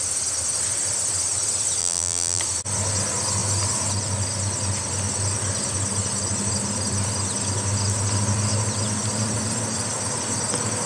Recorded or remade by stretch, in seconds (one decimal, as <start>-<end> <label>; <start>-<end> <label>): 0.0-1.8 recorded; 1.8-2.4 remade; 2.4-10.9 recorded

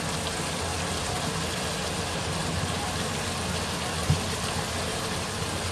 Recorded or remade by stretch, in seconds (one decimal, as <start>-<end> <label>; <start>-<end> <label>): 0.0-4.9 recorded; 4.9-5.7 remade

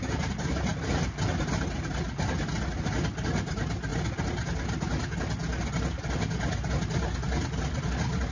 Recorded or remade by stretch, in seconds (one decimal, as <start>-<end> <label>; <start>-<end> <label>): 0.0-8.3 recorded

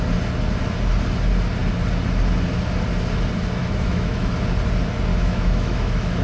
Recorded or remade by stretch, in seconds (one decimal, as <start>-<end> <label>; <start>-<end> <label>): 0.0-3.6 recorded; 3.6-4.3 remade; 4.3-5.1 recorded; 5.1-6.2 remade

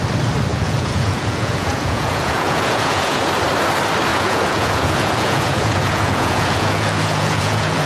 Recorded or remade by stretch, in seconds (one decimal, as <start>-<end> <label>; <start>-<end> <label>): 0.0-0.5 recorded; 0.5-3.3 remade; 3.3-4.1 recorded; 4.1-7.9 remade

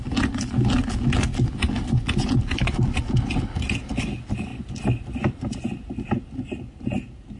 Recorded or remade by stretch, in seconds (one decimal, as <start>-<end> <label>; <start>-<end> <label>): 0.0-7.4 recorded

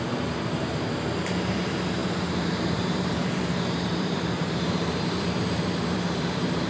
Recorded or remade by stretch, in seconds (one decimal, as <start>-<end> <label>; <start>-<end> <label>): 0.0-6.7 remade

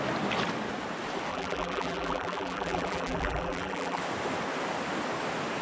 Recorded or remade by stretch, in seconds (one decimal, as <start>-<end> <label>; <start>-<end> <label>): 0.0-1.3 recorded; 1.3-4.0 remade; 4.0-5.6 recorded